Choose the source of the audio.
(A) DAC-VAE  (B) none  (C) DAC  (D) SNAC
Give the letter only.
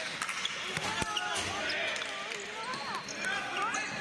B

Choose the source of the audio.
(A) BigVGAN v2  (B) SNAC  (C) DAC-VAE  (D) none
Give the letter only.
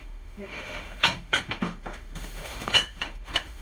C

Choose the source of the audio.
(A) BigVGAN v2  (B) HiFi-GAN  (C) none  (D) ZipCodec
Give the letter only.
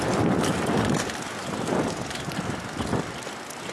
A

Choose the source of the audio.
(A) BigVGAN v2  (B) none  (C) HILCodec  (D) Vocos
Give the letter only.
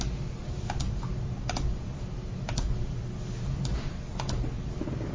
B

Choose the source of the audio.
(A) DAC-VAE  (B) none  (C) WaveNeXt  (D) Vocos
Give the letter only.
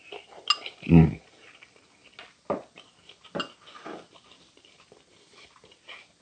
B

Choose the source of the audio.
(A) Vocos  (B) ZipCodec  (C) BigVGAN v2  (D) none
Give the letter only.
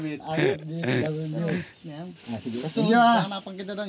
D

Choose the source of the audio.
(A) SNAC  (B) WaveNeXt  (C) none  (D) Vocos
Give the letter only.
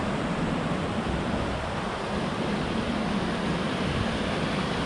C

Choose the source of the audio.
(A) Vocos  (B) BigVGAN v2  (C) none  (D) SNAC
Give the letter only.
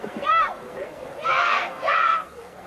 D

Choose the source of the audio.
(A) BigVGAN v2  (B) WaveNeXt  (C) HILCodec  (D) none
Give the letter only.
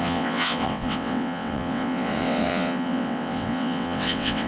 B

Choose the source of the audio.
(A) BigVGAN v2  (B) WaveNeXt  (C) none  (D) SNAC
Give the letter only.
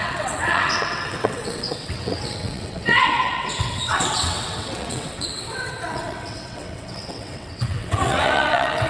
B